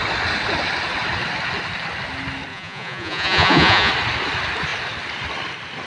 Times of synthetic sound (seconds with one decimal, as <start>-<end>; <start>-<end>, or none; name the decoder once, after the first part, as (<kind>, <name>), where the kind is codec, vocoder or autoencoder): 2.5-3.9 (vocoder, Vocos)